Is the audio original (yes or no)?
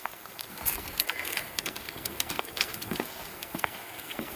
no